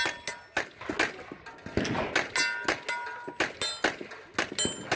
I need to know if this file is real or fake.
real